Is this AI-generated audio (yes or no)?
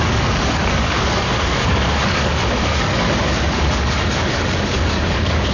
yes